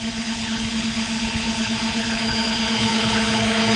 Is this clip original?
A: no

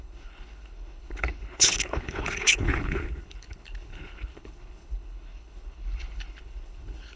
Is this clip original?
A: no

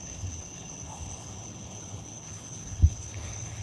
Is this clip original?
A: no